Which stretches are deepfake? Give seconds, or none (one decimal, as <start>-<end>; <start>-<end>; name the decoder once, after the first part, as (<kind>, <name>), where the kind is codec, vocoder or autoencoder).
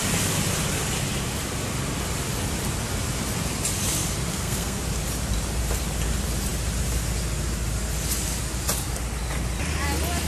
4.3-4.8 (codec, SNAC)